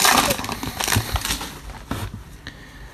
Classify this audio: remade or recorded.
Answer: recorded